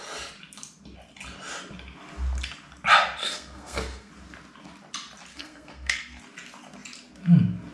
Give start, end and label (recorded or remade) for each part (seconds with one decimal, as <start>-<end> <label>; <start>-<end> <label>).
0.0-3.2 recorded; 3.2-4.1 remade; 4.1-5.3 recorded; 5.3-6.2 remade; 6.2-7.7 recorded